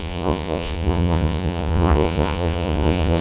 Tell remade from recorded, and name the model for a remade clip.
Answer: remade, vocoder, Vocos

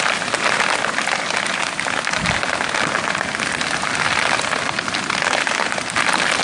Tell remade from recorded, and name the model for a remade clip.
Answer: recorded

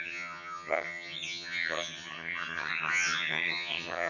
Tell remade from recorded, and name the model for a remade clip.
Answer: remade, vocoder, HiFi-GAN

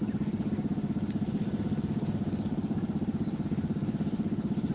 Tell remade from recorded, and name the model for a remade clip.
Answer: recorded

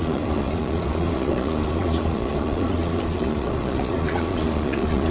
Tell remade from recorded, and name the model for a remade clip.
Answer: remade, vocoder, Vocos